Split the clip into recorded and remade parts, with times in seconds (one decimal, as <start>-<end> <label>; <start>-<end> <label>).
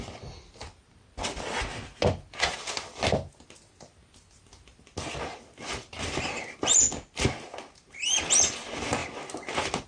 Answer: 0.0-9.9 recorded